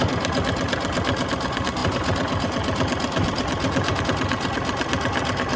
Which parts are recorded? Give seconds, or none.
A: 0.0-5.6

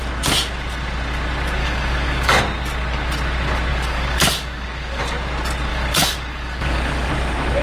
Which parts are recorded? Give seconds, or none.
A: 0.0-1.6; 2.4-3.7; 5.0-5.7; 7.1-7.6

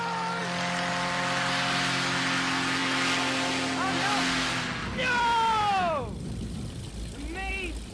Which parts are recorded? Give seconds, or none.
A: 0.0-7.9

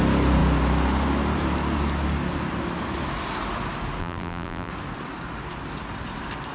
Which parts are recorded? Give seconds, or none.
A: 0.0-4.0; 4.7-6.5

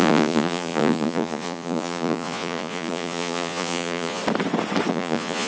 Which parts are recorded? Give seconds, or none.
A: 4.2-4.9

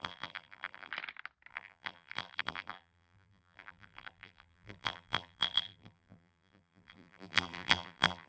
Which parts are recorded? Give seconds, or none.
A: 0.9-1.5

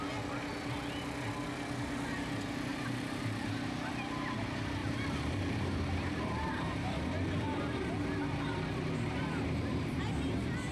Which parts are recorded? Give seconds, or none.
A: 0.0-2.7; 3.5-4.8; 10.0-10.7